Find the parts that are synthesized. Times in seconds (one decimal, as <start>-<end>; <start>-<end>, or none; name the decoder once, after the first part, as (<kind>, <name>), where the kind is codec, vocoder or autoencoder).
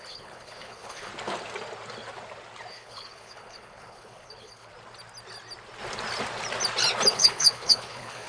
0.0-1.1 (codec, HILCodec); 2.7-4.7; 7.1-8.3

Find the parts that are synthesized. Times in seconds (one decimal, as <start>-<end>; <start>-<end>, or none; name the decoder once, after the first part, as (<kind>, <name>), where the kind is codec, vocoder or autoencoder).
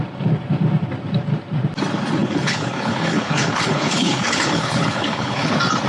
2.2-5.5 (codec, HILCodec)